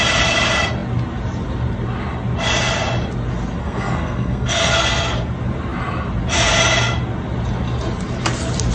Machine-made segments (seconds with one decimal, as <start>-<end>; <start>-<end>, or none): 3.6-5.3